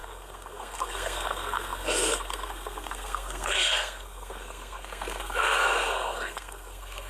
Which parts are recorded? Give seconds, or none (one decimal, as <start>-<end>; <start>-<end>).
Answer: none